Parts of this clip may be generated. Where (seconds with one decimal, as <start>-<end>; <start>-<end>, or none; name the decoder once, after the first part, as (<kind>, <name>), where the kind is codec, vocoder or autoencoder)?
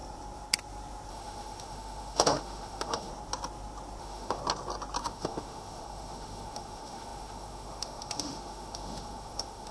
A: 1.1-3.1 (autoencoder, DAC-VAE); 4.0-4.4; 5.0-9.7